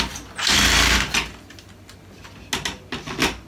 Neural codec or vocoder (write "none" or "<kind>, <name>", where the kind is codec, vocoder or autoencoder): none